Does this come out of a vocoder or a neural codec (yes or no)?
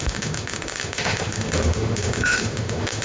yes